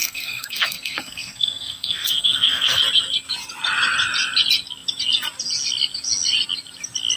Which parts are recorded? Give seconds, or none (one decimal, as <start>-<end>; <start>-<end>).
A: 2.8-7.2